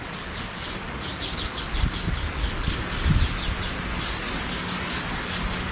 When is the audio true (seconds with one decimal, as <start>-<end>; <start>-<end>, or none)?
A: 3.4-4.0